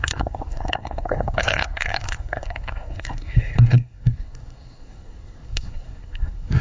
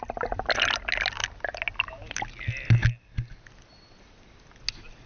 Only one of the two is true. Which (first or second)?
second